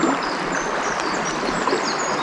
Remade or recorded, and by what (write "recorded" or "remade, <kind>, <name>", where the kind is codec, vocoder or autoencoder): recorded